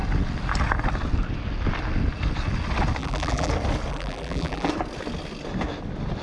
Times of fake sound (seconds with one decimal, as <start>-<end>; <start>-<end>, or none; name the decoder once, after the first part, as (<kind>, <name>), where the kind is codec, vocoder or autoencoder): 3.0-3.5 (vocoder, BigVGAN v2); 3.9-4.7